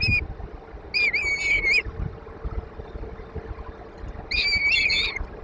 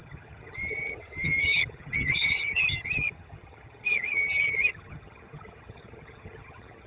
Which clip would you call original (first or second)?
first